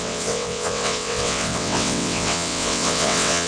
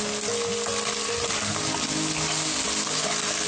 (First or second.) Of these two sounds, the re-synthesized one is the first